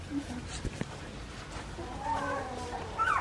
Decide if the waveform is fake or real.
real